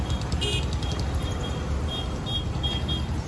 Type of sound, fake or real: real